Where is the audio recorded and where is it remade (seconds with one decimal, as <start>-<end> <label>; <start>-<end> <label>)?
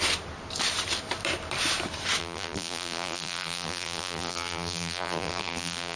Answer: 0.0-2.2 recorded; 2.2-6.0 remade